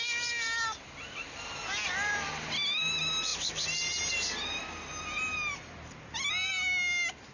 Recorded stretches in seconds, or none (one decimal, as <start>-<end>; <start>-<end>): 0.0-7.3